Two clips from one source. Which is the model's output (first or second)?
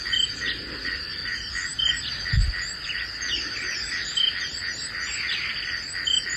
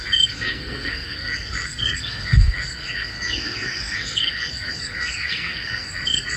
second